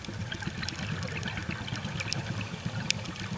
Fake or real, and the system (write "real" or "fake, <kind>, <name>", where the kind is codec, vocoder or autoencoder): real